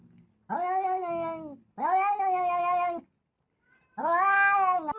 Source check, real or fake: real